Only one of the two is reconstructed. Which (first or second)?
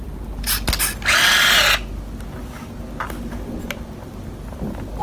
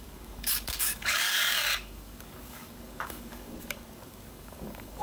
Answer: second